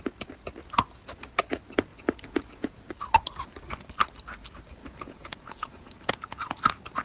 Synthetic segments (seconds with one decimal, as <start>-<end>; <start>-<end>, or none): 1.9-2.7; 4.8-6.6